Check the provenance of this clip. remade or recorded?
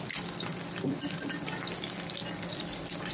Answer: recorded